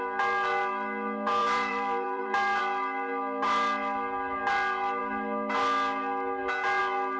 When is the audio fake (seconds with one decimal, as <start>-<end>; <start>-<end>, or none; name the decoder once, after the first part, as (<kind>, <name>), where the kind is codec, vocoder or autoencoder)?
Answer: 1.4-2.6 (vocoder, BigVGAN v2)